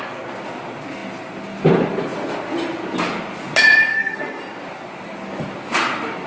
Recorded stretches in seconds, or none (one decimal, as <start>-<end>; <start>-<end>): 0.0-3.9; 4.4-6.3